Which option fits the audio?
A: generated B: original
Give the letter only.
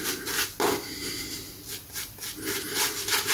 B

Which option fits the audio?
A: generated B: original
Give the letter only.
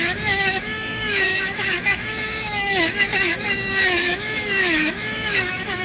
A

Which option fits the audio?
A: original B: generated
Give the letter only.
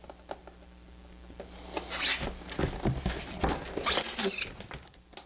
A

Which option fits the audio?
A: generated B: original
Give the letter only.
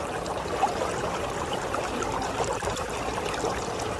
B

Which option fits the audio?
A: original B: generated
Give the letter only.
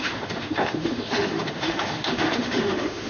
B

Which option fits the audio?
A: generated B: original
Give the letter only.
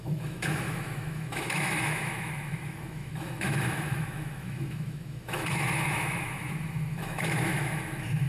A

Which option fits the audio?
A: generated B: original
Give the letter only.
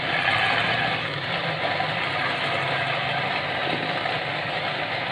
B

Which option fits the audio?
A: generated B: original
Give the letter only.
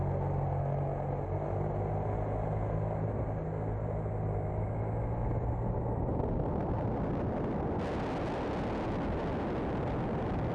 B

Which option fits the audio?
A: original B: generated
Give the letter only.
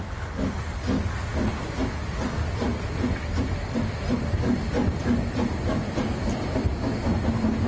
A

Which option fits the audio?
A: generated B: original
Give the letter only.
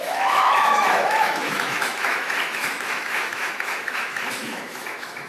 A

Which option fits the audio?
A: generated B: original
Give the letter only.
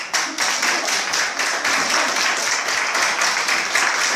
B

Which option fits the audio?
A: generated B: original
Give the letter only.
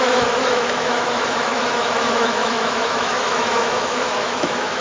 A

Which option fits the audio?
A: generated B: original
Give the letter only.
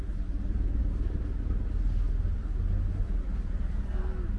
B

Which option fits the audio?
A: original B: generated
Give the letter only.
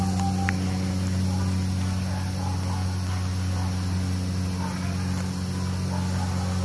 A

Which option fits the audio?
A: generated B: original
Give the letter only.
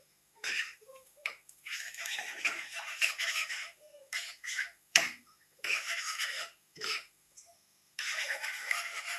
A